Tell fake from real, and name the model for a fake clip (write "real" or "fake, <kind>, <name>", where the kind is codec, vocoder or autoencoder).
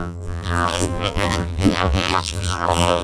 fake, vocoder, BigVGAN v2